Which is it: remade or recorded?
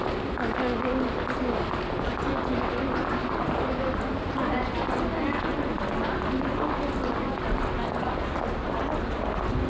recorded